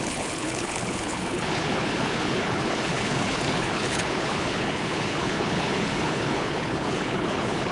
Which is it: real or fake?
fake